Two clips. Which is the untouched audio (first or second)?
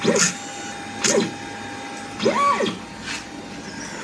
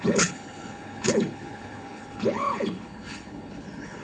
first